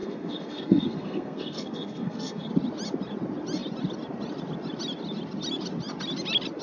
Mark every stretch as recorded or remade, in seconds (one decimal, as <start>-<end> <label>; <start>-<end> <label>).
0.0-2.5 remade; 2.5-6.6 recorded